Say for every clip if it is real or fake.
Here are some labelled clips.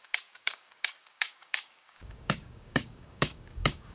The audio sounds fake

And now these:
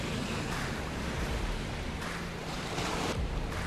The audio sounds fake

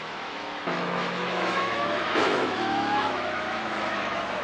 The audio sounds fake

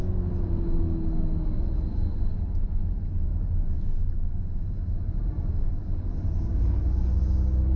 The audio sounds real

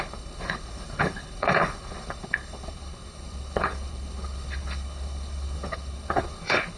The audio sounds fake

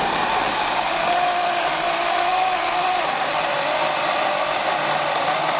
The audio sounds real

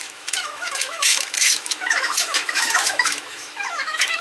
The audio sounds fake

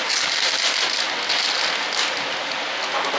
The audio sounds real